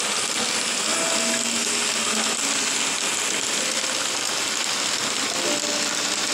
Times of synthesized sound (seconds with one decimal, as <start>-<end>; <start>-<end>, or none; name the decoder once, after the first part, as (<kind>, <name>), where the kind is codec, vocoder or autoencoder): none